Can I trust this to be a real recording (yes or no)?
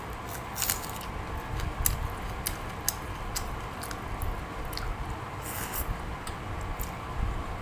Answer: yes